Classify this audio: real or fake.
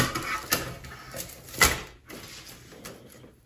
real